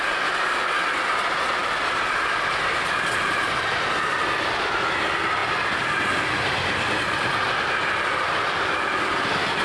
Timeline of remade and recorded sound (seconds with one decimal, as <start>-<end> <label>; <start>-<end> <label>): 0.0-9.6 recorded